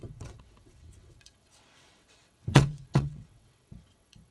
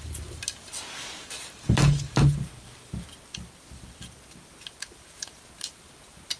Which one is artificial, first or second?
first